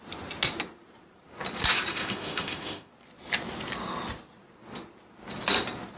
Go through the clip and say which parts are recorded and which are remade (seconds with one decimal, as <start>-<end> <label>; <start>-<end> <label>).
0.0-1.9 recorded; 1.9-2.9 remade; 2.9-6.0 recorded